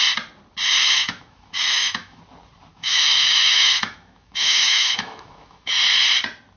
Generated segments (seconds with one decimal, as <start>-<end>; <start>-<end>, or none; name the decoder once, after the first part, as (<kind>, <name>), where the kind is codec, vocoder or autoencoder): 0.8-2.2 (autoencoder, DAC-VAE); 2.7-5.7